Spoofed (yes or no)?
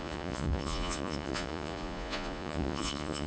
yes